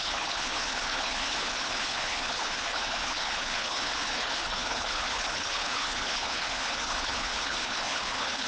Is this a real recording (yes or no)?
no